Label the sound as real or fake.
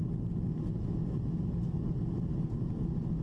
real